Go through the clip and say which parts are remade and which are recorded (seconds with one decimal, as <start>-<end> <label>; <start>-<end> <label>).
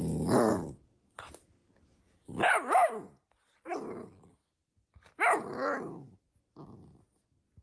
0.0-7.6 recorded